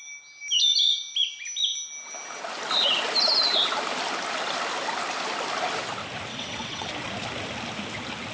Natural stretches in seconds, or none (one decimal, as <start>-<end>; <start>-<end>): 0.0-6.3; 6.9-8.3